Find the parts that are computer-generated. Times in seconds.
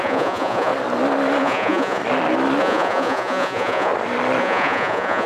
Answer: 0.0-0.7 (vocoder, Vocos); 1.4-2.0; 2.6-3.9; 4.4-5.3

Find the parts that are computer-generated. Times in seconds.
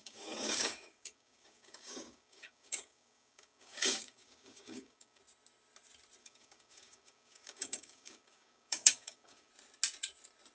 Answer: 0.0-5.2 (codec, DAC); 6.2-9.5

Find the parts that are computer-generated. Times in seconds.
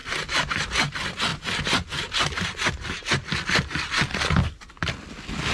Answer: none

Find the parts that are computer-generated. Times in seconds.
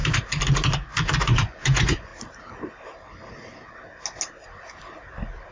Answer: 1.2-2.1 (vocoder, Vocos)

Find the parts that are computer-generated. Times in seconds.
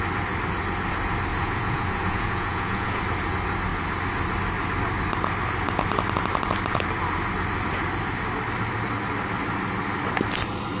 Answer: 1.3-3.0 (vocoder, Vocos)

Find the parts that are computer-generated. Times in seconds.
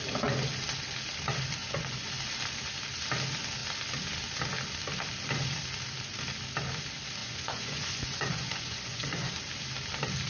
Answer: 1.6-2.1 (vocoder, Vocos); 7.2-9.3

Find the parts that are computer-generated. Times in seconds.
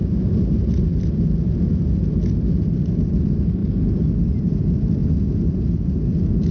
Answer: none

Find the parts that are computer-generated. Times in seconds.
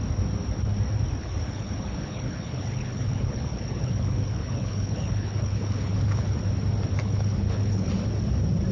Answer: 1.2-6.4 (codec, HILCodec); 7.0-7.9